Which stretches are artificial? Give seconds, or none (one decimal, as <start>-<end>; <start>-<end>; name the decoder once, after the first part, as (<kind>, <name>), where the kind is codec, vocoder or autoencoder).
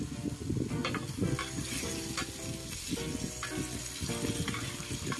none